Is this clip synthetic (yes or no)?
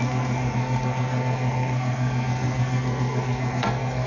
yes